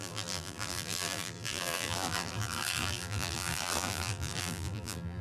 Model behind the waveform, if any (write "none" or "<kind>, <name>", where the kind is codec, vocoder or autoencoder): vocoder, BigVGAN v2